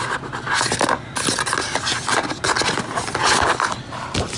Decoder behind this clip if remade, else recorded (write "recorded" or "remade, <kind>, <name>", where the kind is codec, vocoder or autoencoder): recorded